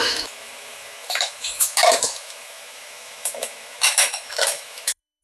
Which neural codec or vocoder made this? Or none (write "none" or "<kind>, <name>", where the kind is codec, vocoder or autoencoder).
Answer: autoencoder, DAC-VAE